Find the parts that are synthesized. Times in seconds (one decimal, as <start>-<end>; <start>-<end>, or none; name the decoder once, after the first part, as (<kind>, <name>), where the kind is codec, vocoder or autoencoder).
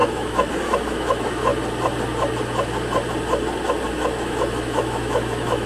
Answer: 0.0-1.5 (autoencoder, DAC-VAE); 3.9-5.7